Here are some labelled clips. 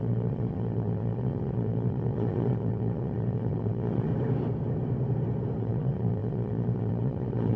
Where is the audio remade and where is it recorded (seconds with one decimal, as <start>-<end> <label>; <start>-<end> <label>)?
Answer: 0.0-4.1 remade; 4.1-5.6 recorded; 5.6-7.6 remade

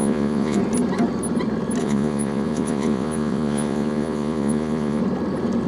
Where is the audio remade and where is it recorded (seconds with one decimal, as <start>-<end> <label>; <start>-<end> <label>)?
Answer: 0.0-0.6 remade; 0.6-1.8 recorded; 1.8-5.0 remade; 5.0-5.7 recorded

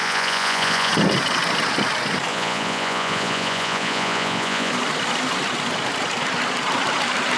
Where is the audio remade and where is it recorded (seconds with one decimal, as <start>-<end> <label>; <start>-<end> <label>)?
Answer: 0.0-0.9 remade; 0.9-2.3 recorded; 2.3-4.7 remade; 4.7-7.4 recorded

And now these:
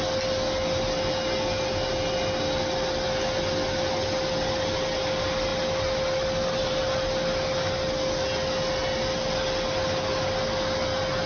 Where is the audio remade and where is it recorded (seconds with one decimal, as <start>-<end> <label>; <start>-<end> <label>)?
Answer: 0.0-11.3 recorded